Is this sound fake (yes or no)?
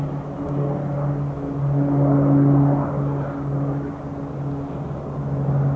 no